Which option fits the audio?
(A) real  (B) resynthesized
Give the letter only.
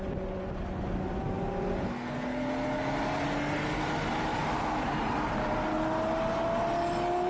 A